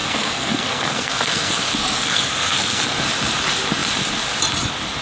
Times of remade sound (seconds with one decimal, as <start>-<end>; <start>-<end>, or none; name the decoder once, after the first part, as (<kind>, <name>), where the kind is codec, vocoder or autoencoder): 0.0-3.0 (codec, SNAC)